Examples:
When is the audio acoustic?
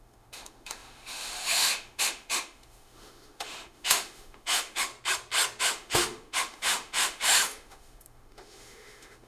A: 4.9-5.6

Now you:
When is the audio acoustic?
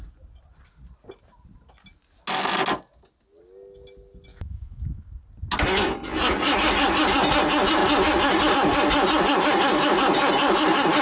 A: 0.0-4.3; 5.1-11.0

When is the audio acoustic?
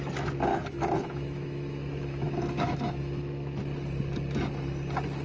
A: 0.0-0.5; 3.6-5.2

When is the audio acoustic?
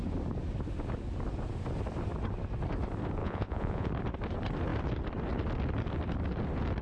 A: 0.0-3.2; 3.9-6.8